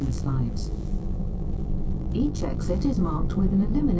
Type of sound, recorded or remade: remade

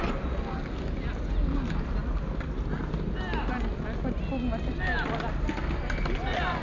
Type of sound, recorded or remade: recorded